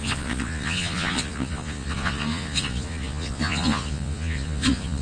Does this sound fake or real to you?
fake